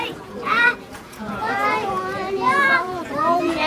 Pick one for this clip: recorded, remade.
remade